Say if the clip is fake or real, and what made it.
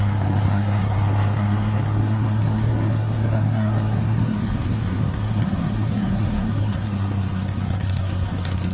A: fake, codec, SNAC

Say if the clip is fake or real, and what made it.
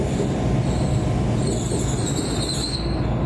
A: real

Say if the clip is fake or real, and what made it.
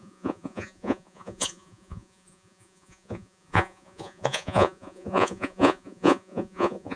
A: fake, vocoder, Vocos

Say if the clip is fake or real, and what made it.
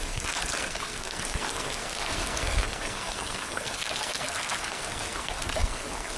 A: fake, codec, SNAC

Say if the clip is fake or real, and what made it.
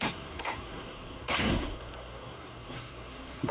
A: fake, codec, SNAC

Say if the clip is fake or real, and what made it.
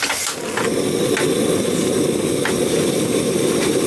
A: real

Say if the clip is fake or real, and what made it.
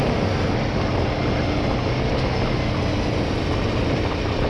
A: real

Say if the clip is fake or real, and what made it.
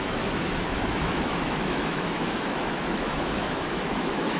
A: fake, autoencoder, DAC-VAE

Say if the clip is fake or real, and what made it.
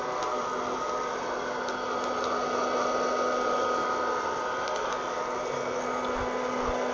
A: real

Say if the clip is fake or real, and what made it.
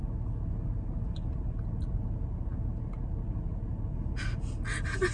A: real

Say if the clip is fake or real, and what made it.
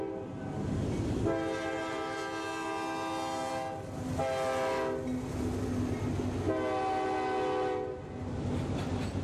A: real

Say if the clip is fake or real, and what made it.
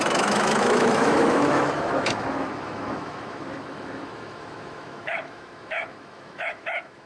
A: fake, autoencoder, DAC-VAE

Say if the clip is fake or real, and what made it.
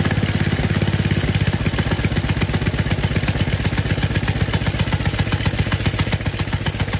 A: real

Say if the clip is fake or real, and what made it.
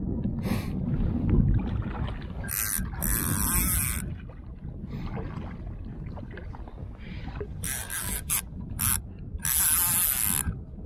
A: real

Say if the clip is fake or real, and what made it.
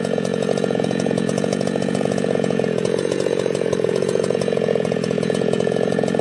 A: fake, vocoder, Vocos